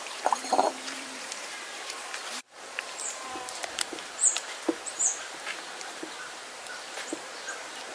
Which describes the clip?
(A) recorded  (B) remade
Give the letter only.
B